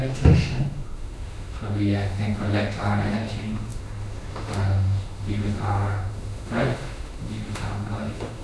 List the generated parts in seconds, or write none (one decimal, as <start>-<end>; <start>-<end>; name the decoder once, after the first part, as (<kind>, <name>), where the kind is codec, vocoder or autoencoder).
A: 0.0-8.4 (autoencoder, DAC-VAE)